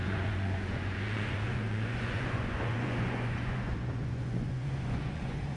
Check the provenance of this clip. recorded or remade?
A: remade